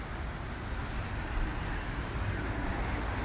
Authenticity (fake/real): real